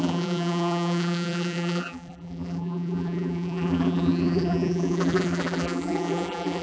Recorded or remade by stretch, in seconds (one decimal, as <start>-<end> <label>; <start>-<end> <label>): 0.0-6.6 remade